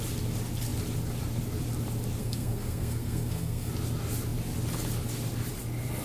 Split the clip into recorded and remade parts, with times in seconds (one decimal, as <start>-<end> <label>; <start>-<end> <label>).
0.0-2.2 recorded; 2.2-3.7 remade; 3.7-6.0 recorded